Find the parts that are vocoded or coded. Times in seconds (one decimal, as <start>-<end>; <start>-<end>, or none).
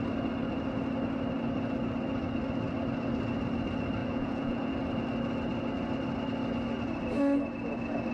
4.0-4.7